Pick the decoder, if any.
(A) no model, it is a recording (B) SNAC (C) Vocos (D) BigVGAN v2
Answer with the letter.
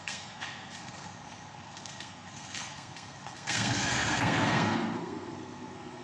B